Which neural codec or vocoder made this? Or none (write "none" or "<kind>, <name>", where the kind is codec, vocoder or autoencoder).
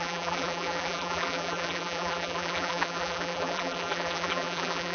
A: vocoder, BigVGAN v2